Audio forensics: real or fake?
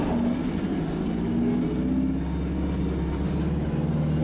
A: real